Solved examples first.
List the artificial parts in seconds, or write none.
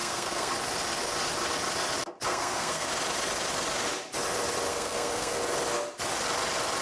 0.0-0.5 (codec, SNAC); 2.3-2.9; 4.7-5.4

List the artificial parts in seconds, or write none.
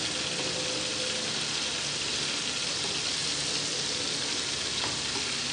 none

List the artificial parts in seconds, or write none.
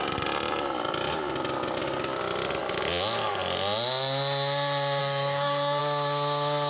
5.0-5.8 (codec, SNAC)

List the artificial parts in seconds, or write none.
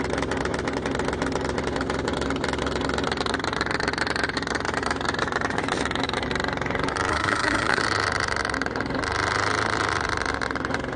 7.1-7.8 (codec, SNAC)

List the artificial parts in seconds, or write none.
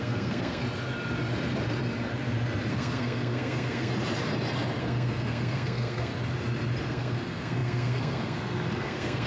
0.0-0.6 (codec, SNAC); 2.7-3.9; 4.8-6.1; 6.9-9.3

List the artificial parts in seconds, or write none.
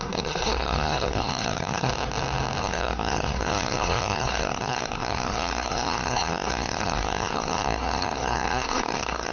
0.0-1.9 (codec, SNAC); 2.6-9.3